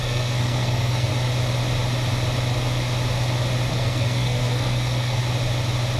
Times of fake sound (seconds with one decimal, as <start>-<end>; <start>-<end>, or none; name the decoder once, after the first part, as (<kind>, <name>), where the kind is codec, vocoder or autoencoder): 0.0-1.1 (codec, SNAC); 3.7-5.2